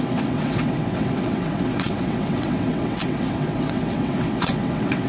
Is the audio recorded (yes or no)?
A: no